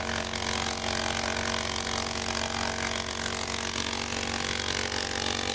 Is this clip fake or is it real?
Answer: real